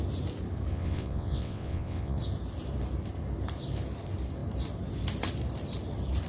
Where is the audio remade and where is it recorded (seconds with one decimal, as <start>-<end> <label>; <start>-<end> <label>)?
0.0-0.7 recorded; 0.7-2.2 remade; 2.2-6.3 recorded

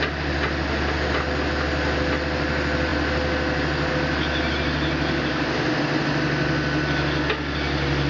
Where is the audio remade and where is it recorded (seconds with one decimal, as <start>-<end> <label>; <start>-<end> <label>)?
0.0-8.1 recorded

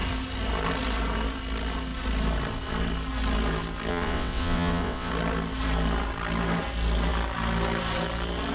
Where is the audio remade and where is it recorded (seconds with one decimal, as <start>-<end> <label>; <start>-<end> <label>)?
0.0-3.9 recorded; 3.9-5.1 remade; 5.1-8.5 recorded

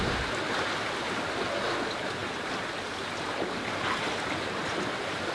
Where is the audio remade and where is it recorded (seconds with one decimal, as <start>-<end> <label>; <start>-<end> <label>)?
0.0-5.3 recorded